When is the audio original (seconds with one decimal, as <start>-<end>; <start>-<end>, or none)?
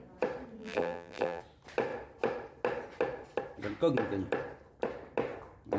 0.0-0.6; 1.4-5.8